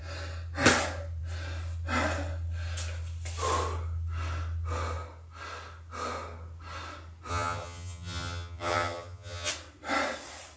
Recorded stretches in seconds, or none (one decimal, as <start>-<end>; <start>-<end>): 0.0-7.3; 9.5-10.6